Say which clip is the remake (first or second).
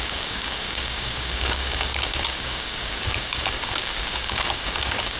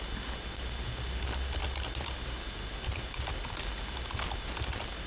first